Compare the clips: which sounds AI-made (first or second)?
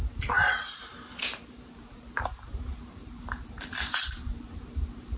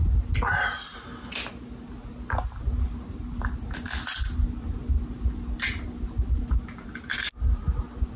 first